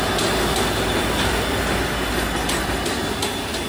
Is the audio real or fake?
real